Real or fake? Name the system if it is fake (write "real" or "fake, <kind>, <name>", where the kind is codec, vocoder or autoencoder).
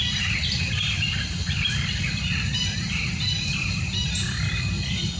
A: fake, vocoder, BigVGAN v2